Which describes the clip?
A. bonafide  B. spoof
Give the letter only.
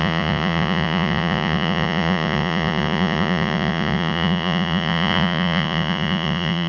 B